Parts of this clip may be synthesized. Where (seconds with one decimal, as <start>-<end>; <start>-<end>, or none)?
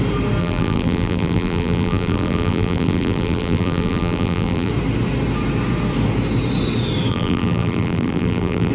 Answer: 0.4-4.7; 7.1-8.7